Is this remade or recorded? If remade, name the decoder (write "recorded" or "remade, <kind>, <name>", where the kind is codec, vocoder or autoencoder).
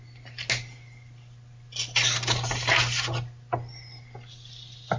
recorded